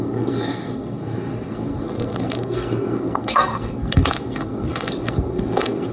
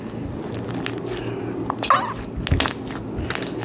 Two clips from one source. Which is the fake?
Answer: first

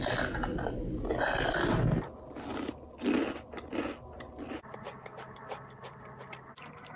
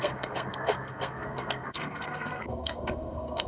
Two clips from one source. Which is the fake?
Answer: second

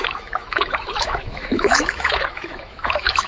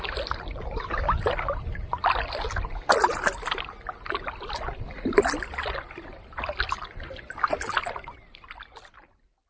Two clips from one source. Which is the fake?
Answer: first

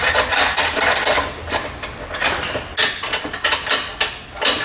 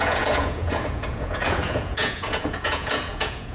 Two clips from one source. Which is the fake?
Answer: second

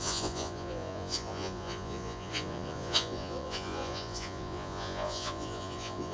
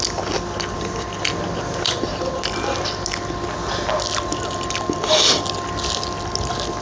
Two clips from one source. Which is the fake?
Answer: first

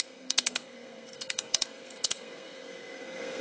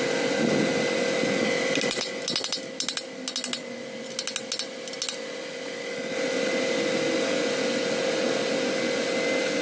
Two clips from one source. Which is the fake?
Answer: first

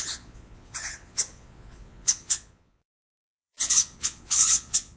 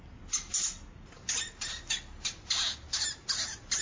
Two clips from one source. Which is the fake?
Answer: first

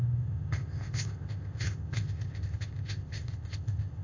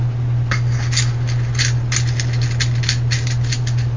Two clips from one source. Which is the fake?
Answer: first